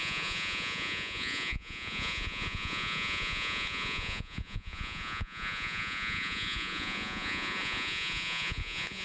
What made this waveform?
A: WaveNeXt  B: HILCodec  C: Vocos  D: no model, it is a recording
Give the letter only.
C